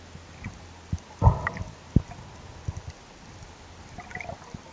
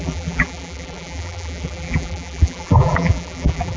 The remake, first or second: second